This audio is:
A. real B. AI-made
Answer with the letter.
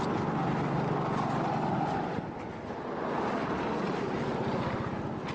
A